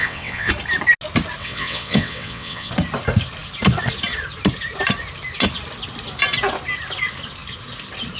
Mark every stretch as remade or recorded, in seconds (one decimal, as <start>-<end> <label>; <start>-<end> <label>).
0.0-0.5 remade; 0.5-1.4 recorded; 1.4-2.7 remade; 2.7-8.2 recorded